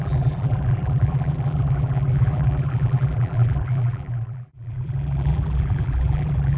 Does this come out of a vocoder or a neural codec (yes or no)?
yes